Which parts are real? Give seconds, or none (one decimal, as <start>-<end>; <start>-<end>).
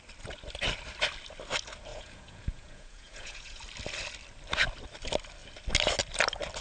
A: 0.0-1.9; 3.6-6.6